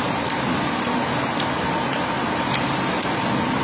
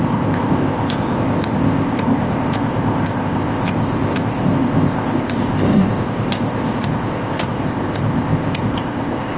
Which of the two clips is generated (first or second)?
second